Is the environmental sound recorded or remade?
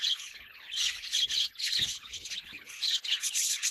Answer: remade